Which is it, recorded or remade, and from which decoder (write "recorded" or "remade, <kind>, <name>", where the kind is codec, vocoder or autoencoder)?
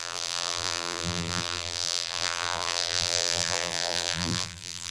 remade, vocoder, BigVGAN v2